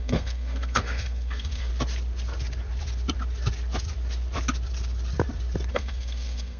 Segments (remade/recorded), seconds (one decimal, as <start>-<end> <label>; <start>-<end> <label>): 0.0-1.7 remade; 1.7-5.7 recorded; 5.7-6.6 remade